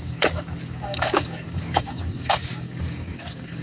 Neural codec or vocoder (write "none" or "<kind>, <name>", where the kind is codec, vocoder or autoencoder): codec, DAC